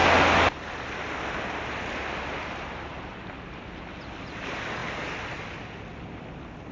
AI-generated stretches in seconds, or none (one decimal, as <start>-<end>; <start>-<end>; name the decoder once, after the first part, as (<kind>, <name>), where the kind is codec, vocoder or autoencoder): none